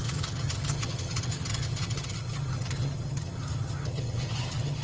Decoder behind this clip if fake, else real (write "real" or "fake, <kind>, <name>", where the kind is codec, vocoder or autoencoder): fake, vocoder, HiFi-GAN